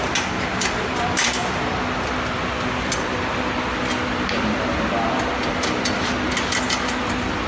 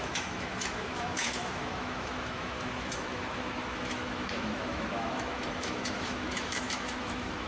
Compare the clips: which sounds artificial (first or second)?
second